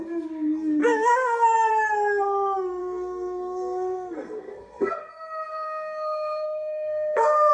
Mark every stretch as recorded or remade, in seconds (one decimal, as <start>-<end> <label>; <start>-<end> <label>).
0.0-0.8 recorded; 0.8-1.7 remade; 1.7-2.8 recorded; 2.8-5.1 remade; 5.1-5.5 recorded; 5.5-7.5 remade

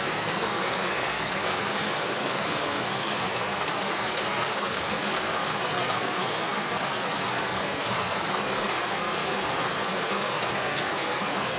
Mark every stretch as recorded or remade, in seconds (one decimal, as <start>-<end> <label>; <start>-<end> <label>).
0.0-11.6 remade

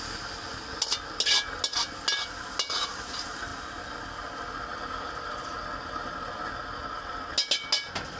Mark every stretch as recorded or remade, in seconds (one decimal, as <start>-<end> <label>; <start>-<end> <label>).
0.0-8.2 recorded

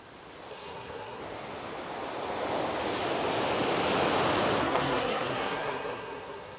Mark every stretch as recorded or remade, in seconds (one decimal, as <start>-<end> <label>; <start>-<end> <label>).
0.0-0.5 recorded; 0.5-1.2 remade; 1.2-4.6 recorded; 4.6-6.6 remade

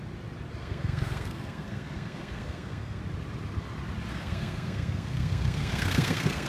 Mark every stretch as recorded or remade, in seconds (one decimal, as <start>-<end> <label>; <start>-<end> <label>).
0.0-0.6 recorded; 0.6-3.0 remade; 3.0-4.1 recorded; 4.1-6.5 remade

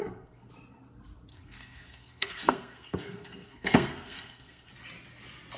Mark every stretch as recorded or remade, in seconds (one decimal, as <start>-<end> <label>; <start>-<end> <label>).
0.0-0.5 remade; 0.5-1.3 recorded; 1.3-4.7 remade; 4.7-5.6 recorded